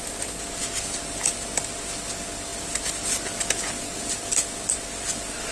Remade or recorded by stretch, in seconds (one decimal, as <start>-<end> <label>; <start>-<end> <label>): 0.0-5.5 recorded